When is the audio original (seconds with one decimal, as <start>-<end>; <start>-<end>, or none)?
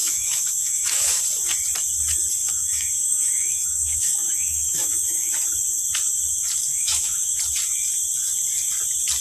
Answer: 1.2-2.4; 5.3-6.7; 7.4-9.2